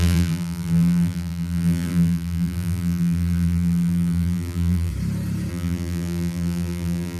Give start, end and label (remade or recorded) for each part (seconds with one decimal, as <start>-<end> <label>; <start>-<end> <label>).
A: 0.0-4.9 remade; 4.9-5.5 recorded; 5.5-7.2 remade